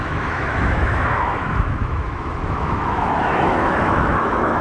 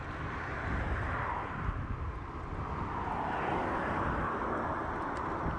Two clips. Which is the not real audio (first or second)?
first